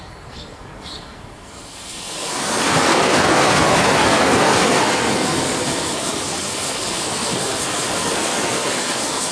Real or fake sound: fake